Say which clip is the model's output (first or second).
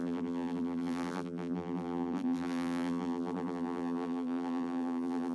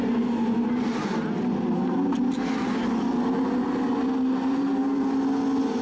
first